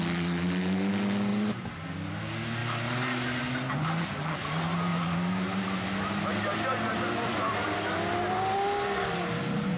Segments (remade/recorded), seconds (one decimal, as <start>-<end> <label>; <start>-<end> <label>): 0.0-9.8 recorded